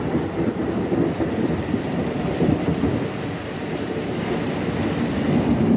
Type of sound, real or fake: fake